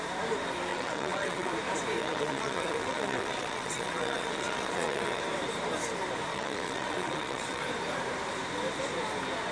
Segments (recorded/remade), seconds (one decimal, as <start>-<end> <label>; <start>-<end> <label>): 0.0-0.7 recorded; 0.7-1.5 remade; 1.5-2.0 recorded; 2.0-5.2 remade; 5.2-6.3 recorded; 6.3-7.6 remade; 7.6-9.5 recorded